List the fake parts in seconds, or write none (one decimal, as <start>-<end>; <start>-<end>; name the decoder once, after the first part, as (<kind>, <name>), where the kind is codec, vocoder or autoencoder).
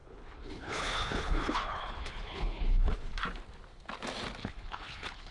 0.0-3.2 (codec, HILCodec); 4.4-5.3